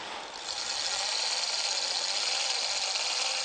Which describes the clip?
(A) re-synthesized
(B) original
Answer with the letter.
B